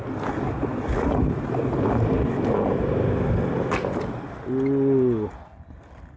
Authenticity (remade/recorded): recorded